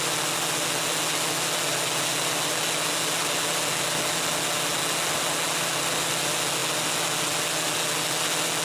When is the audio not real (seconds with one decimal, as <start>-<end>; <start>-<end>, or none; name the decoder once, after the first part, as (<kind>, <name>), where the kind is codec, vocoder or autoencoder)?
none